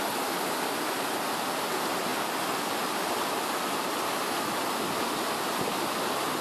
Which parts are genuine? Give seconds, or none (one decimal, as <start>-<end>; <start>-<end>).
0.0-6.4